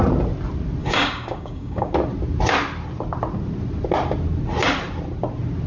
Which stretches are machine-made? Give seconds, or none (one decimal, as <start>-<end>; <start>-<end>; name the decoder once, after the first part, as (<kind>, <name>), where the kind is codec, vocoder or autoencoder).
0.8-1.9 (codec, DAC)